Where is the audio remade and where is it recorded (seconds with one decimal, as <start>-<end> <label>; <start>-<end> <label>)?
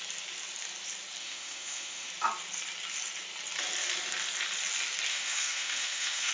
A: 0.0-1.2 recorded; 1.2-2.1 remade; 2.1-5.1 recorded; 5.1-6.3 remade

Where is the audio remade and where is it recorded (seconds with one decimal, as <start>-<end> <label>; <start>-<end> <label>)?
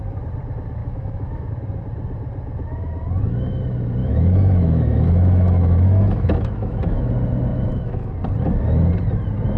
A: 0.0-0.8 recorded; 0.8-1.5 remade; 1.5-4.0 recorded; 4.0-7.1 remade; 7.1-7.5 recorded; 7.5-8.1 remade; 8.1-9.6 recorded